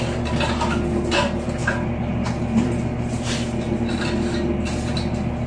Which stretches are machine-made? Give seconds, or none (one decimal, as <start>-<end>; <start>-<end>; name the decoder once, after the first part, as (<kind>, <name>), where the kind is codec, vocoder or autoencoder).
none